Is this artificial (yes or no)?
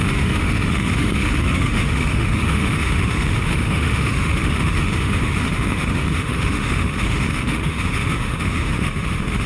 yes